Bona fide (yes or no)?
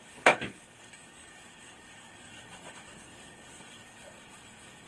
no